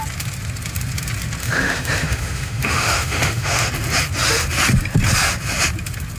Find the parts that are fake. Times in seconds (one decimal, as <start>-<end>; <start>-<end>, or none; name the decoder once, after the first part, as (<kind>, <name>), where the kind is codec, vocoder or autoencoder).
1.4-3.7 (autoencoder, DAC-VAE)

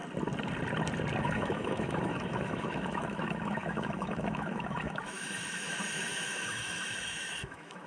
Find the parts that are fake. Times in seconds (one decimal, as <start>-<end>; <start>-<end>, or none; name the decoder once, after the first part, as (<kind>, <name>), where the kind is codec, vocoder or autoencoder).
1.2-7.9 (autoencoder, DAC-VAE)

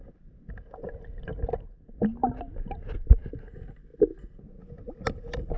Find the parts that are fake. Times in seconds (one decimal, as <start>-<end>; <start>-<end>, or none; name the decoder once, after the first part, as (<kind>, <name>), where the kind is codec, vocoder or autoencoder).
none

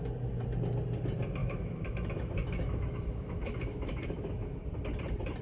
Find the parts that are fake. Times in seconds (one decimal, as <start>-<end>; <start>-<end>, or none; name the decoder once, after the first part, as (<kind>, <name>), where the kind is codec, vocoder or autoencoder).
1.4-4.6 (autoencoder, DAC-VAE)

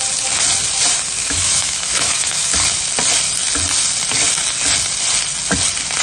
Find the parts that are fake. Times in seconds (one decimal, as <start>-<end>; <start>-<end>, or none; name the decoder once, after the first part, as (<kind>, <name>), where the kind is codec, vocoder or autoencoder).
1.2-2.5 (autoencoder, DAC-VAE)